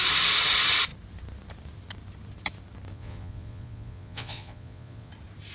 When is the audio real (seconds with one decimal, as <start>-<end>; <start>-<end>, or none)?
0.0-2.9; 5.1-5.5

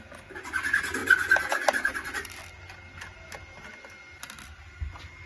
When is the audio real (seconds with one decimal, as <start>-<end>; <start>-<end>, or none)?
0.0-5.3

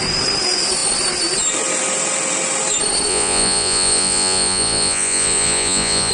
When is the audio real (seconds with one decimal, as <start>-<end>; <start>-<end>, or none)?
0.0-3.1

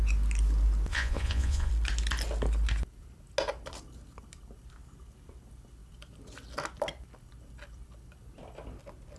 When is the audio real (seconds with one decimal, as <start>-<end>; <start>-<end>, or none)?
0.0-0.9; 1.7-9.2

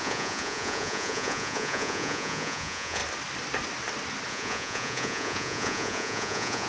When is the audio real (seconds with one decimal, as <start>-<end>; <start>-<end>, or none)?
3.0-4.3

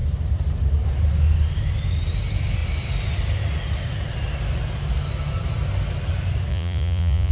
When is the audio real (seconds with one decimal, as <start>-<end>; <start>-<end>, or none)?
0.0-6.5